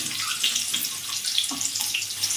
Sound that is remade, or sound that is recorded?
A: recorded